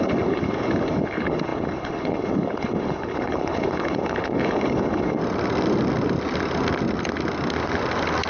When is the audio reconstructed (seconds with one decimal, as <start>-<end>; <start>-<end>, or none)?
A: 0.0-5.2

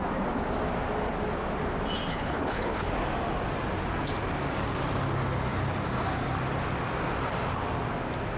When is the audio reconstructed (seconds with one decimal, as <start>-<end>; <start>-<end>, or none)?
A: 2.1-2.9

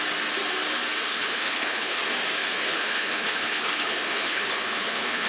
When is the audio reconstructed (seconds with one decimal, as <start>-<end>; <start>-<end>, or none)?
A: 1.1-2.0; 2.4-5.3

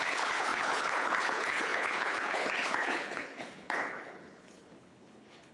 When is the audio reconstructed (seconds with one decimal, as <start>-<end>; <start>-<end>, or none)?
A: 0.0-5.5

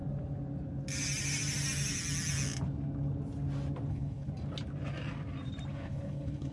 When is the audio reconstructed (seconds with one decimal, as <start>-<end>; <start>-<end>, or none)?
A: 3.9-4.3; 5.7-6.5